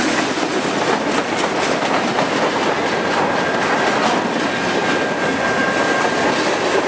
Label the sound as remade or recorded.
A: recorded